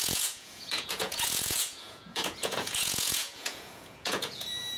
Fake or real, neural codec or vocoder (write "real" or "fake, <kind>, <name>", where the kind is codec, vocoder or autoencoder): fake, vocoder, Vocos